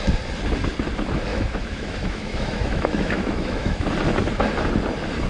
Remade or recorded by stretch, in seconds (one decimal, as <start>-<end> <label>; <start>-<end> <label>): 0.0-1.3 recorded; 1.3-3.9 remade; 3.9-5.3 recorded